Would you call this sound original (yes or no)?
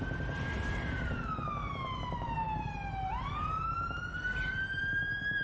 yes